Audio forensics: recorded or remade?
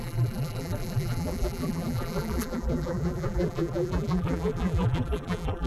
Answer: remade